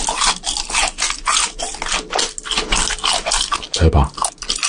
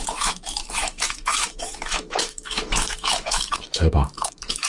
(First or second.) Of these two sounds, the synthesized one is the second